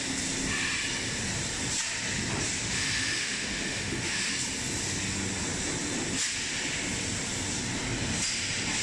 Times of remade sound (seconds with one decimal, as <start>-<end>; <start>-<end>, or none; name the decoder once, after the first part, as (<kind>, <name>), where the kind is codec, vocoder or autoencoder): 2.6-4.3 (autoencoder, DAC-VAE)

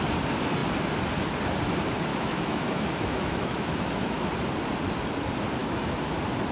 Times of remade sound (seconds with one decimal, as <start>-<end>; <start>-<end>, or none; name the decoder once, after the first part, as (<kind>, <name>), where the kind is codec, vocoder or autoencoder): 2.1-4.3 (autoencoder, DAC-VAE); 5.6-6.1

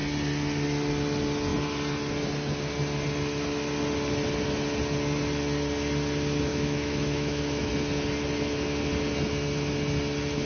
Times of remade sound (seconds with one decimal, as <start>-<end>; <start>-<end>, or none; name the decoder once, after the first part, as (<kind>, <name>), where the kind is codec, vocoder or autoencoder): 6.5-7.7 (autoencoder, DAC-VAE)

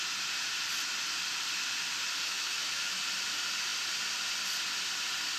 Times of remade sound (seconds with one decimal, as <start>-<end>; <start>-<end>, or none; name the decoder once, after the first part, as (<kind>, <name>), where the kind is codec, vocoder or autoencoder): 2.2-3.0 (autoencoder, DAC-VAE)